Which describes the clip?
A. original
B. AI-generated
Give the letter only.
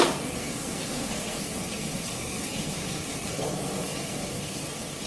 B